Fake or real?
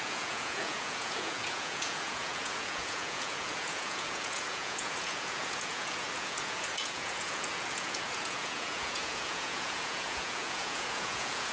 fake